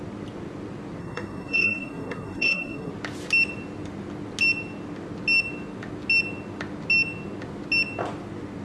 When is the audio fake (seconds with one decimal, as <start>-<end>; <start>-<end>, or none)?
1.0-2.9